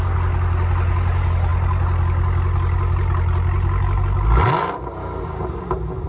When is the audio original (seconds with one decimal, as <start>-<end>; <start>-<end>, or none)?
0.0-6.1